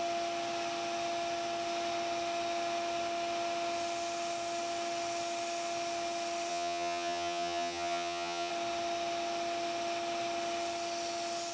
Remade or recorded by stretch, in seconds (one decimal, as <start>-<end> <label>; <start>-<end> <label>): 0.0-6.5 recorded; 6.5-8.5 remade; 8.5-11.5 recorded